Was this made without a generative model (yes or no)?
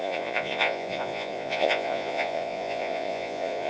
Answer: no